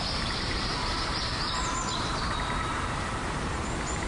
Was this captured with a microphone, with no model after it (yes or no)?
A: no